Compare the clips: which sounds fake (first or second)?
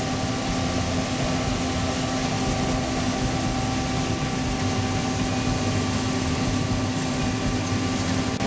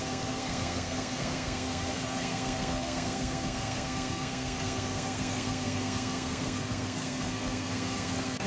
second